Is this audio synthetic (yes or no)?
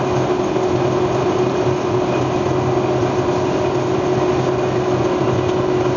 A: no